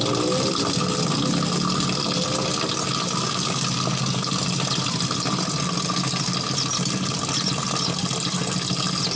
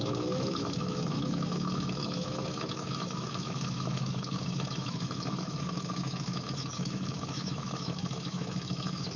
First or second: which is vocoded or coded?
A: second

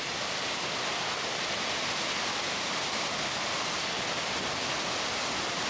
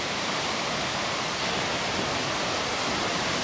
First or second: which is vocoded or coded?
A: second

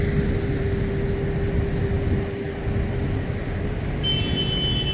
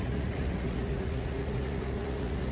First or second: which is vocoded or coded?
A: second